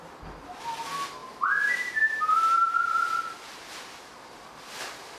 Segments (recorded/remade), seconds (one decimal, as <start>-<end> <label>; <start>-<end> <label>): 0.0-5.2 recorded